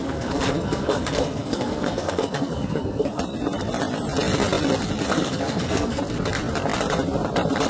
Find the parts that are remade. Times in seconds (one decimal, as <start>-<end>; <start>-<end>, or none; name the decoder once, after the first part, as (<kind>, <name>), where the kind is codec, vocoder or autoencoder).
0.0-3.2 (codec, SNAC); 5.1-6.0